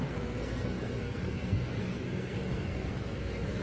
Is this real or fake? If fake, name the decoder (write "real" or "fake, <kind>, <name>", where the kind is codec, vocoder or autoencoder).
fake, codec, SNAC